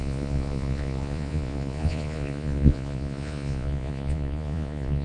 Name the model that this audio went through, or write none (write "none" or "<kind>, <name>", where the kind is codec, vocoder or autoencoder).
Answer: vocoder, Vocos